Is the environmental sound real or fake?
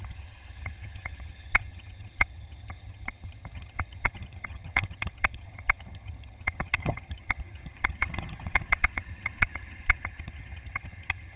fake